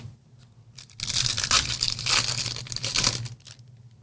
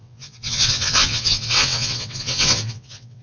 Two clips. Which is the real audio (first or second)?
first